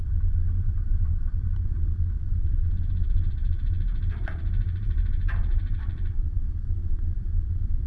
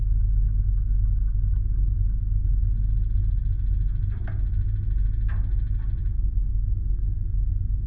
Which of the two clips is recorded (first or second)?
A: second